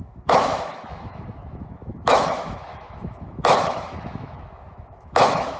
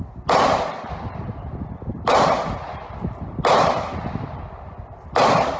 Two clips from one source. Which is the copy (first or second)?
first